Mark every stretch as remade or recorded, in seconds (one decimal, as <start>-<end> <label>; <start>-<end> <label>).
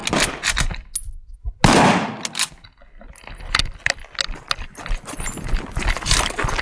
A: 0.0-6.6 recorded